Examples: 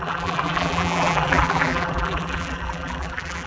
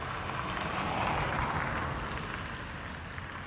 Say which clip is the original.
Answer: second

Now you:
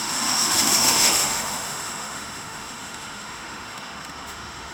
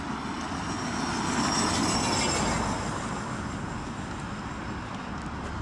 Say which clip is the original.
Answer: second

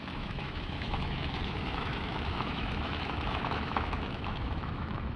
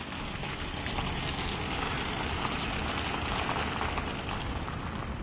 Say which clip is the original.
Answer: second